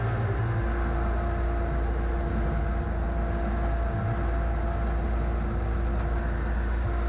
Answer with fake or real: real